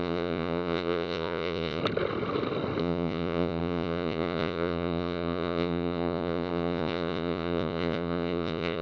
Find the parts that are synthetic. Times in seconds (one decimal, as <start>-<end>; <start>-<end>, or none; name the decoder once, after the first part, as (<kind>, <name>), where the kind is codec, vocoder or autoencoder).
0.0-1.8 (vocoder, Vocos); 2.8-8.8